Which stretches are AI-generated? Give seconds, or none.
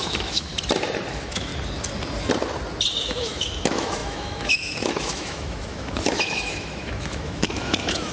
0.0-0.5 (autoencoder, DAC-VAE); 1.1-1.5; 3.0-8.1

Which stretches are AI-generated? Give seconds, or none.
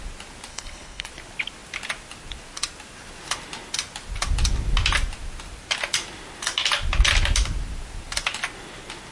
0.5-1.1 (codec, HILCodec)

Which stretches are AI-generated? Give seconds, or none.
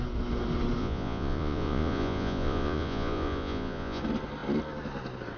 0.8-4.0 (vocoder, Vocos)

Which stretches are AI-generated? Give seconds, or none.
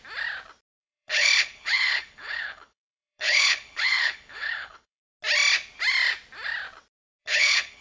0.8-5.0 (codec, HILCodec); 7.2-7.8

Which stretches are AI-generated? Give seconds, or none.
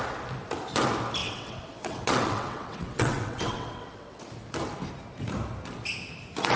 1.2-4.2 (vocoder, WaveNeXt)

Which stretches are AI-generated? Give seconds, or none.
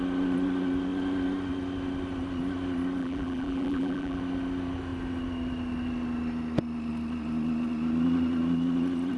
3.0-4.2 (vocoder, BigVGAN v2)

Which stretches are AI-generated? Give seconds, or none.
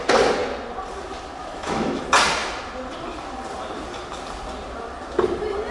1.4-2.0 (autoencoder, DAC-VAE)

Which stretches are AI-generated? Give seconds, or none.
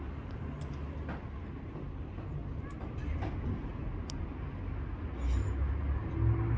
none